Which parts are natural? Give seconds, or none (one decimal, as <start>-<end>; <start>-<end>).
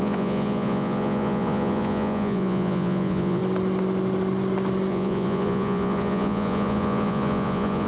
3.4-4.9